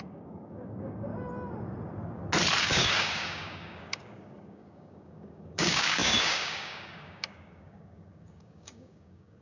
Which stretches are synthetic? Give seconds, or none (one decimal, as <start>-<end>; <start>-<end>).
0.0-1.1; 2.6-9.4